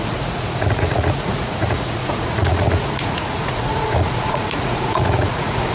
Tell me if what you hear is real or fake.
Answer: fake